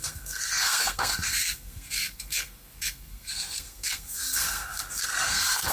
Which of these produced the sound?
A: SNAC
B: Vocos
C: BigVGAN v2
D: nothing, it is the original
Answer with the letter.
A